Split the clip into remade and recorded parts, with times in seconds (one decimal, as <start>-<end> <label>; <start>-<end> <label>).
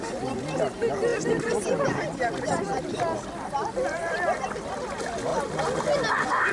0.0-6.5 recorded